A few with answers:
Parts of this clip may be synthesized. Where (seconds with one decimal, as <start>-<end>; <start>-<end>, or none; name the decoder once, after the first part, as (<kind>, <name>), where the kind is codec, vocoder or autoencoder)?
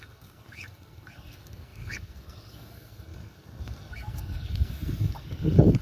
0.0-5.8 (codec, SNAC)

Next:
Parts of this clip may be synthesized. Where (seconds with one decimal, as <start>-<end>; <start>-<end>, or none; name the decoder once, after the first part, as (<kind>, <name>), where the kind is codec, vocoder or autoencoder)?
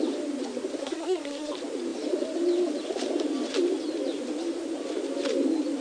0.8-1.5 (codec, SNAC)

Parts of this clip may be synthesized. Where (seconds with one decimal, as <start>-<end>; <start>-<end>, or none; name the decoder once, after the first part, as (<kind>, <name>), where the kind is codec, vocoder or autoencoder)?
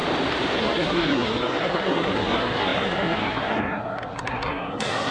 0.6-5.1 (codec, SNAC)